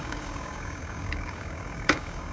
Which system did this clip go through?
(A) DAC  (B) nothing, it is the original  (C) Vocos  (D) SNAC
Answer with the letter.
A